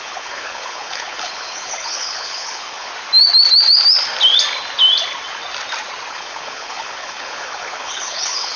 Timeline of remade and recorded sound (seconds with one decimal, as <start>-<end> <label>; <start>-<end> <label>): 0.0-2.9 remade; 2.9-6.1 recorded; 6.1-8.6 remade